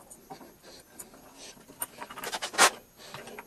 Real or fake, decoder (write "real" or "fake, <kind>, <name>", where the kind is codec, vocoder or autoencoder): real